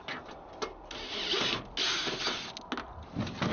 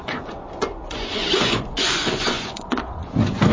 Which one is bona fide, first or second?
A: first